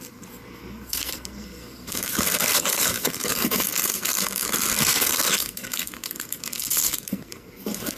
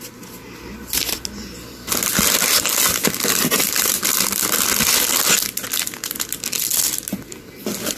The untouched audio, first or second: second